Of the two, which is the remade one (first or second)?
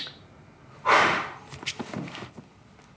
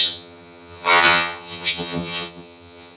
second